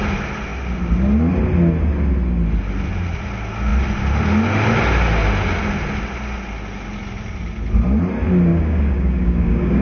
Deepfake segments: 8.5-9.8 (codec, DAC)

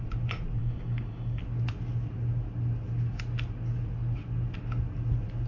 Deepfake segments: 0.6-1.4 (codec, DAC)

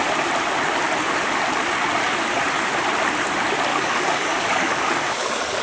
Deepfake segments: 3.7-5.6 (codec, DAC)

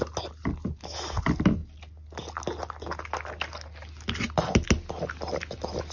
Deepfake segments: none

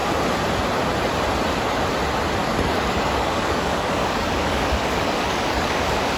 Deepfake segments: 2.4-6.2 (codec, DAC)